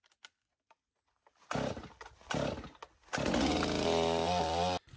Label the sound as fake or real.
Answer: real